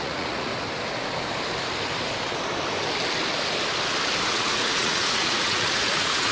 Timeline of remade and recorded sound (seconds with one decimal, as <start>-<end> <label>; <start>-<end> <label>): 0.0-0.5 remade; 0.5-4.3 recorded; 4.3-6.3 remade